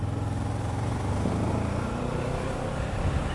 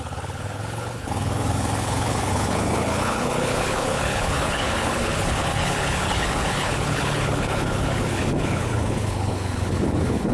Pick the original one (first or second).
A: first